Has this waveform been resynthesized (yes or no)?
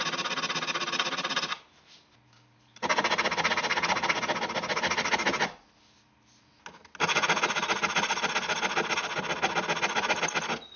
no